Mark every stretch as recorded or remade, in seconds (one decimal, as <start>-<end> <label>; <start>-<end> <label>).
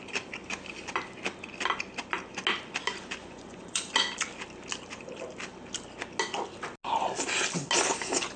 0.0-3.2 recorded; 3.2-3.9 remade; 3.9-8.4 recorded